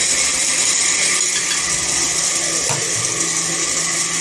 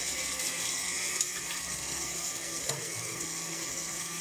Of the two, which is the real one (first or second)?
first